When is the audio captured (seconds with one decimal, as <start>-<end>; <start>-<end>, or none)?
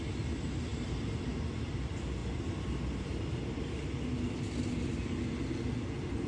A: 0.0-6.3